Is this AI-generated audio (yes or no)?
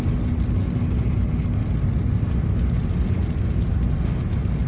no